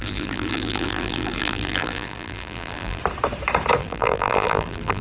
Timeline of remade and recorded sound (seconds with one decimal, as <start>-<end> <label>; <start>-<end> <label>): 0.0-3.0 remade; 3.0-3.8 recorded; 3.8-5.0 remade